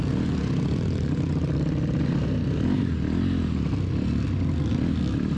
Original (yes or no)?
yes